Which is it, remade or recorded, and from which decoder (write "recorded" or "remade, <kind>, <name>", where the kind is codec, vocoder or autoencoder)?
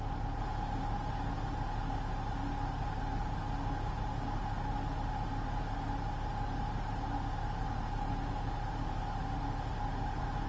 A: recorded